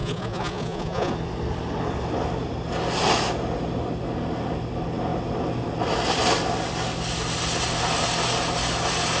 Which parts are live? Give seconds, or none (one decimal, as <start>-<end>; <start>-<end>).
1.1-9.2